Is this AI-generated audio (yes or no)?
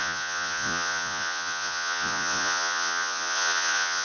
yes